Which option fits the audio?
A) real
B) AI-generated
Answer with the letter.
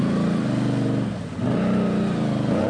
A